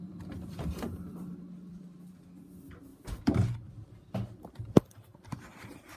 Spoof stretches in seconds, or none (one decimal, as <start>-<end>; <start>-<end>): 0.0-1.7